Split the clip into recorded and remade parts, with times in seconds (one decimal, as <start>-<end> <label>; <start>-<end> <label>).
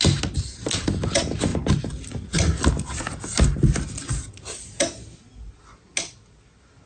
0.0-6.9 recorded